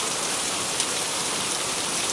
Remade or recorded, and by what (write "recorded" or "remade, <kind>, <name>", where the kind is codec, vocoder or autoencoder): remade, vocoder, BigVGAN v2